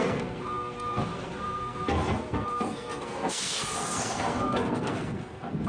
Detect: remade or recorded remade